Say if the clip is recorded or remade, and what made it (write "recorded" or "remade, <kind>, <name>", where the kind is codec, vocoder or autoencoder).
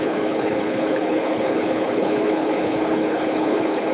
remade, codec, HILCodec